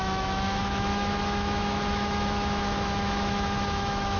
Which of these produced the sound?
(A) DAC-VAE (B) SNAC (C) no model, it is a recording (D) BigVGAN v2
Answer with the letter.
A